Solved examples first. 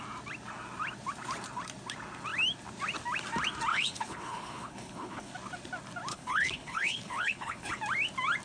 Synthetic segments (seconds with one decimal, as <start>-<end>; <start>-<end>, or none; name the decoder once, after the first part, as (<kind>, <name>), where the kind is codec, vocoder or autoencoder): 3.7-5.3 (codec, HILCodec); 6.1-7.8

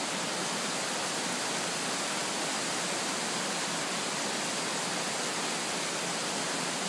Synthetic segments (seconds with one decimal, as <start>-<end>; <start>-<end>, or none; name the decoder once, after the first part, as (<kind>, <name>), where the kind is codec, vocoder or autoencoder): none

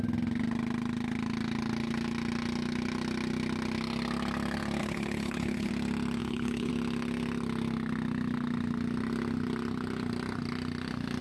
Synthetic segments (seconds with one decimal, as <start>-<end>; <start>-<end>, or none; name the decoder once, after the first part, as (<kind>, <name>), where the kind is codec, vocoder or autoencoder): 4.8-5.7 (codec, HILCodec); 6.2-6.7